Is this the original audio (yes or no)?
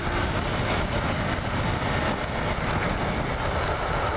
yes